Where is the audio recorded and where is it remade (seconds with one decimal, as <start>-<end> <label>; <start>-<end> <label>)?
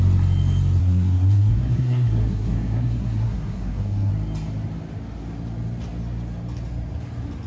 0.0-0.8 recorded; 0.8-4.1 remade; 4.1-7.5 recorded